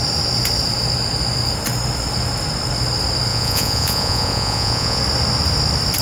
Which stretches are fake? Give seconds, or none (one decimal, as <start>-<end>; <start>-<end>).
3.3-5.0